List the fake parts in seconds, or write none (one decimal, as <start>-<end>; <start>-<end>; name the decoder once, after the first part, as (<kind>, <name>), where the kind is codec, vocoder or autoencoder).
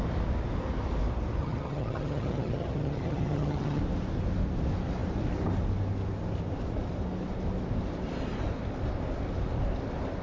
1.4-3.8 (vocoder, HiFi-GAN)